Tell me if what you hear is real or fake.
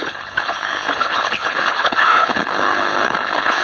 fake